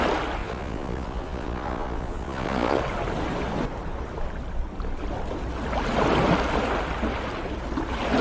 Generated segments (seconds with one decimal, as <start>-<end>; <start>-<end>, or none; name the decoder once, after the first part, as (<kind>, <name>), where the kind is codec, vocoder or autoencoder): 0.4-2.8 (vocoder, Vocos)